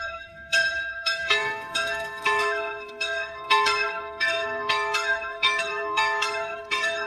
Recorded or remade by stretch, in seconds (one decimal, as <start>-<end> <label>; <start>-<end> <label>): 0.0-7.1 remade